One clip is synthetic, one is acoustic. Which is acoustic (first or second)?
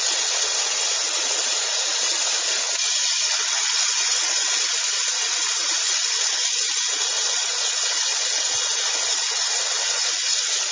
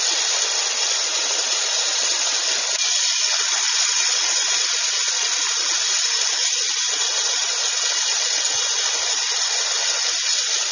second